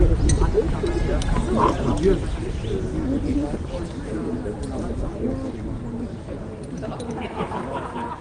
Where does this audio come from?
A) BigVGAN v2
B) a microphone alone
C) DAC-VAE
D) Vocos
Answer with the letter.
B